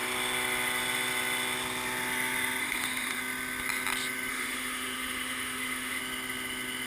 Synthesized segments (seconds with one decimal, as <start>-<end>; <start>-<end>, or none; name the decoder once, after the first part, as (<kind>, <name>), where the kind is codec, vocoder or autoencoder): 2.6-3.2 (autoencoder, DAC-VAE); 4.3-6.0